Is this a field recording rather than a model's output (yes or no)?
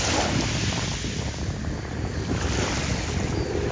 yes